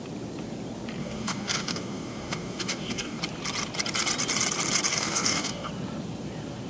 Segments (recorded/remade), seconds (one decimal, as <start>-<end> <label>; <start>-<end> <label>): 0.0-1.0 recorded; 1.0-3.2 remade; 3.2-4.9 recorded; 4.9-5.7 remade; 5.7-6.7 recorded